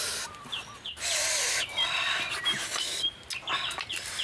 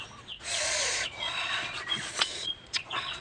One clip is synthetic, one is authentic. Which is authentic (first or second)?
first